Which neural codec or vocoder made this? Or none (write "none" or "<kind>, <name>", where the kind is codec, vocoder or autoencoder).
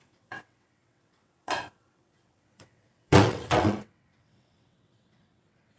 vocoder, WaveNeXt